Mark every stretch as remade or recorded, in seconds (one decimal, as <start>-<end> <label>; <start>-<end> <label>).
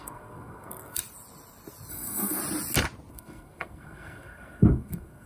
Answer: 0.0-1.0 remade; 1.0-1.9 recorded; 1.9-2.4 remade; 2.4-3.1 recorded; 3.1-5.3 remade